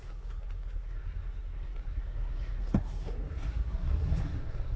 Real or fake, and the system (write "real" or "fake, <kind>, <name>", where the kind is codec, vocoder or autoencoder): fake, codec, SNAC